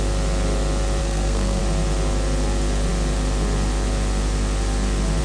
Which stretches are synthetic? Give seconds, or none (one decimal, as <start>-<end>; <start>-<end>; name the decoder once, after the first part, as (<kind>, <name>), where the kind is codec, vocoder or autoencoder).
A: 1.0-1.6 (codec, SNAC)